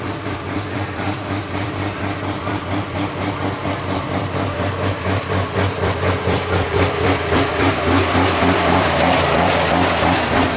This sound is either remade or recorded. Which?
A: remade